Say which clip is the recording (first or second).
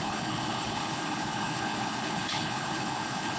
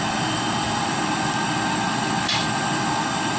second